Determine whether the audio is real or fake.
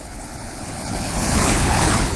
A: fake